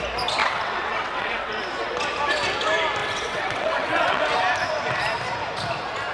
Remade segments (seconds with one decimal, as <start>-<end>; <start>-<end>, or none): 0.4-1.6; 3.0-4.2